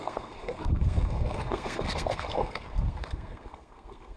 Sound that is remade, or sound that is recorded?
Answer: remade